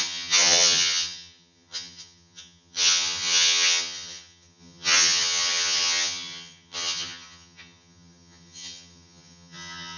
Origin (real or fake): fake